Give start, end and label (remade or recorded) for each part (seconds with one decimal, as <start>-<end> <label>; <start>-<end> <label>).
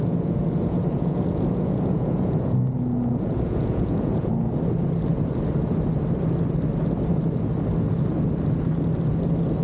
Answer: 0.0-4.3 remade; 4.3-9.6 recorded